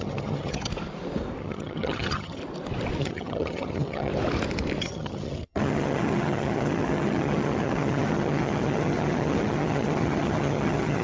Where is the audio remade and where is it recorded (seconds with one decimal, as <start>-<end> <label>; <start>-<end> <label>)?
0.0-0.7 remade; 0.7-1.4 recorded; 1.4-2.4 remade; 2.4-3.0 recorded; 3.0-4.1 remade; 4.1-4.8 recorded; 4.8-11.0 remade